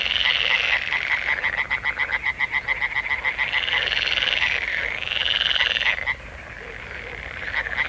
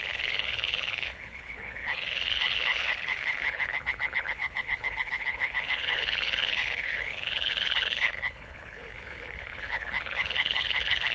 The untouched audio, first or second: first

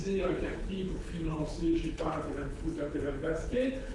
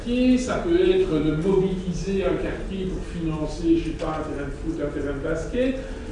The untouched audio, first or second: second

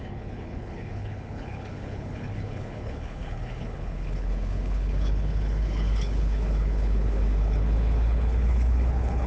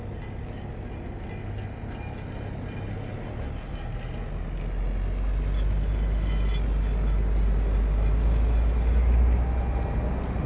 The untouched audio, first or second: second